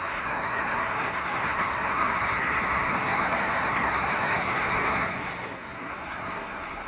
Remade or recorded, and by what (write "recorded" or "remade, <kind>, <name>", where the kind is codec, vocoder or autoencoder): remade, codec, SNAC